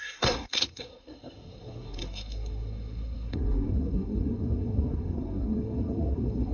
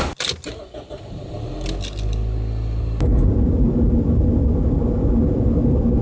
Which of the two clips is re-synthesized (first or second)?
first